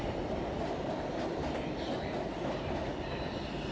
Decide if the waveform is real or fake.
real